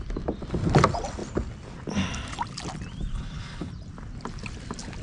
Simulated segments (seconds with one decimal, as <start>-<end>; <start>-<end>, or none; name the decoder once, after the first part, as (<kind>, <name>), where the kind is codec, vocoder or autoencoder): 3.1-3.7 (codec, HILCodec)